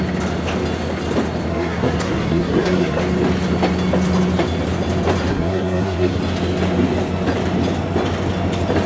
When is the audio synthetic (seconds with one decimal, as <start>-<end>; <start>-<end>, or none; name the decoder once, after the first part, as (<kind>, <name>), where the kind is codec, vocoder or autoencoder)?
1.5-3.0 (codec, SNAC); 5.3-6.2